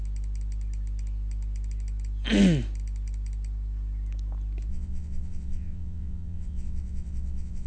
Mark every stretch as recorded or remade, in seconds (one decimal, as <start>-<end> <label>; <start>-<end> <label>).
0.0-4.7 recorded; 4.7-7.7 remade